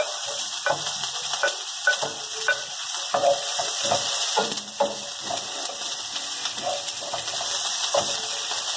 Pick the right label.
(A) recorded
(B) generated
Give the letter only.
B